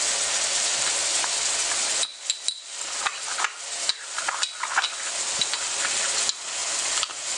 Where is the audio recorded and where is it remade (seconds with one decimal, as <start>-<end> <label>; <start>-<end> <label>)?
0.0-7.4 recorded